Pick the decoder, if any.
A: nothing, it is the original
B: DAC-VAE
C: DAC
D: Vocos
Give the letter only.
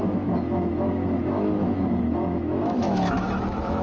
B